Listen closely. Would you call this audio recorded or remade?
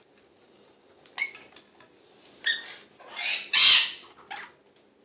recorded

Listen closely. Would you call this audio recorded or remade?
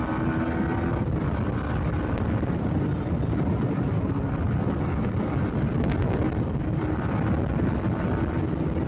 recorded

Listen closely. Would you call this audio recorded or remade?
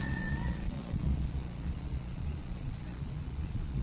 remade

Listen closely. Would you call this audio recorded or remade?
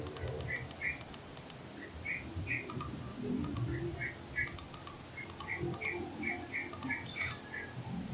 recorded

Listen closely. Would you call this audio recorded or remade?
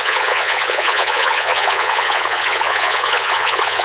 remade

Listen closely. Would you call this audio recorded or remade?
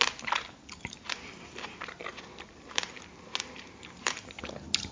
recorded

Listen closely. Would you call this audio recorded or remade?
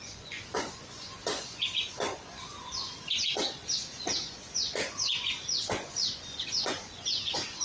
remade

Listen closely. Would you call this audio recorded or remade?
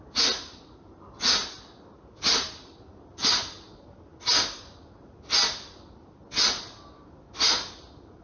recorded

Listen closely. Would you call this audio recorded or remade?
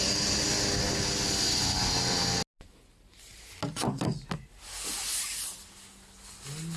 recorded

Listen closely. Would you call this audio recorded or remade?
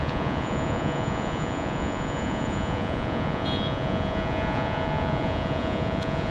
remade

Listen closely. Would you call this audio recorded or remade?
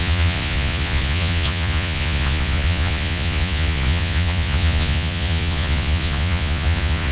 remade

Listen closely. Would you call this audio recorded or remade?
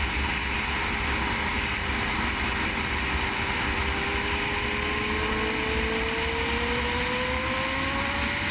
recorded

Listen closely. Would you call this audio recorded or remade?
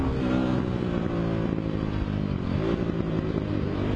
recorded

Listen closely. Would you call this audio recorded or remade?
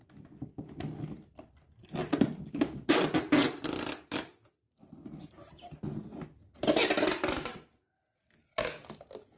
recorded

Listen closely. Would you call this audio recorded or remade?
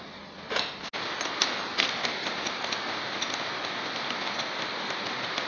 recorded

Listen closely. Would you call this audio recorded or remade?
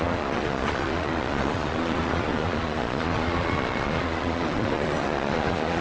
remade